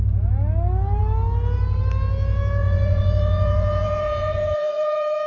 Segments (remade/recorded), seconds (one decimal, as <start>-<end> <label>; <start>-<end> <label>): 0.0-2.6 recorded; 2.6-5.3 remade